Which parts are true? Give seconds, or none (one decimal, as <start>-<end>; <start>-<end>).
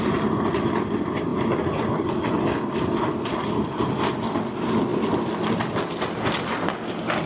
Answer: 0.0-7.3